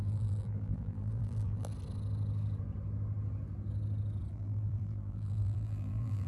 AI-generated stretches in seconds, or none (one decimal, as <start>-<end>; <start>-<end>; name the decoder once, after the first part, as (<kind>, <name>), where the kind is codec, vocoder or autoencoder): 0.0-1.7 (vocoder, BigVGAN v2); 4.3-6.3